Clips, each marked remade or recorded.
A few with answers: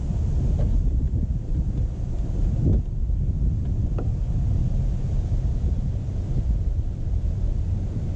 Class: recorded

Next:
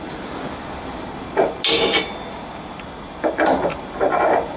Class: recorded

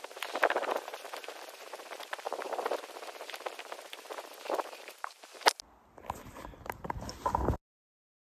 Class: recorded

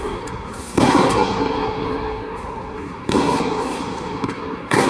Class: remade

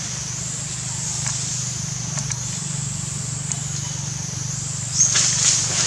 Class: recorded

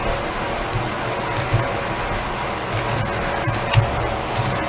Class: recorded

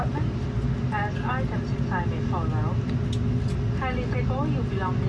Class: recorded